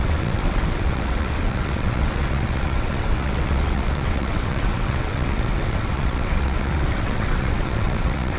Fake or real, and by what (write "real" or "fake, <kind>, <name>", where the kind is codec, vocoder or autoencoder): fake, vocoder, WaveNeXt